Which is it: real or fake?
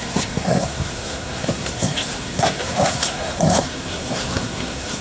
fake